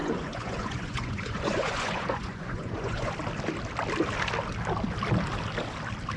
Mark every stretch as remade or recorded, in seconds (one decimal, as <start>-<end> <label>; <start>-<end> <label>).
0.0-3.1 remade; 3.1-6.2 recorded